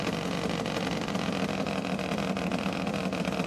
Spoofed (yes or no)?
no